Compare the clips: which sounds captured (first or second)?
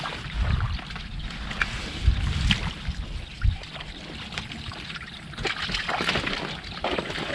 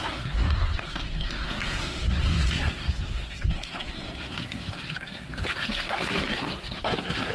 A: first